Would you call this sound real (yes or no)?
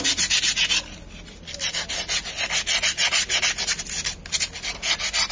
yes